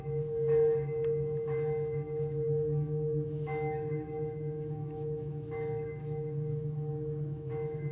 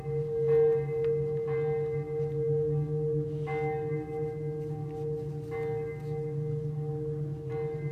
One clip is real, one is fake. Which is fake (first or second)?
first